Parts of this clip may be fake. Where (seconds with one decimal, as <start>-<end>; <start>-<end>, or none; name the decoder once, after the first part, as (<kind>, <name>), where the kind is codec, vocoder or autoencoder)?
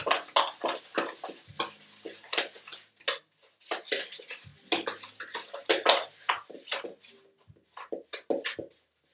none